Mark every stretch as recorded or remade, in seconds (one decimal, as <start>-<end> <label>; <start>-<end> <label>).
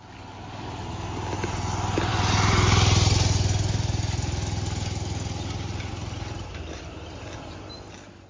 0.0-8.3 recorded